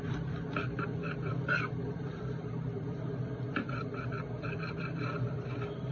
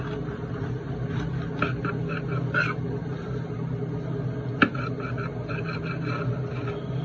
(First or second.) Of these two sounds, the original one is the second